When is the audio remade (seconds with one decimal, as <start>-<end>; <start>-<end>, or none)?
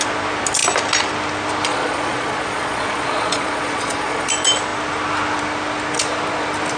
1.7-4.3